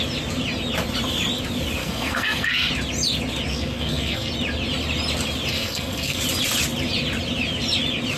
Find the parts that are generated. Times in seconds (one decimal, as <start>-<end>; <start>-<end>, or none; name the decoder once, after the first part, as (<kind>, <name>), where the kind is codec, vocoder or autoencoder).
1.8-2.7 (codec, SNAC); 3.5-4.3; 5.5-6.2